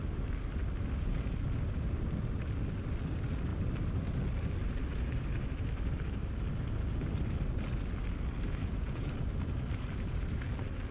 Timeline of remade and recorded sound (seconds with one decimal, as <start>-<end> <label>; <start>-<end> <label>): 0.0-8.6 recorded; 8.6-9.1 remade; 9.1-10.9 recorded